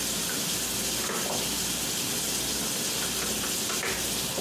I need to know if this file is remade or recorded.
remade